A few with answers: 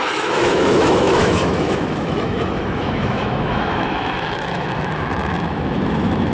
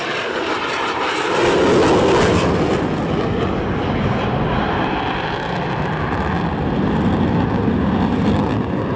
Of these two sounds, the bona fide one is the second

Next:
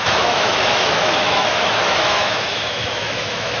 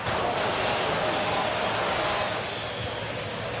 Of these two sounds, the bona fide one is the second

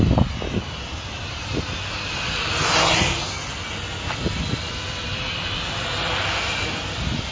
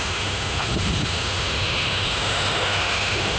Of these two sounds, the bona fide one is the first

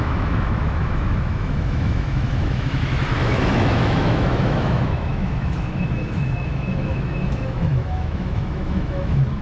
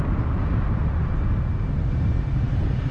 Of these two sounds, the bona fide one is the second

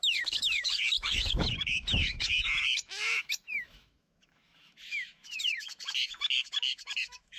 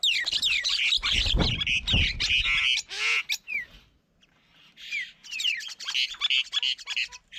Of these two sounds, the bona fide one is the second